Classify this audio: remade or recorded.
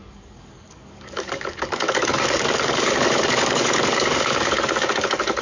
remade